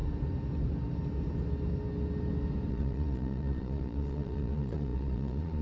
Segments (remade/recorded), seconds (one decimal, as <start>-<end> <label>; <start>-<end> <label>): 0.0-2.7 recorded; 2.7-5.6 remade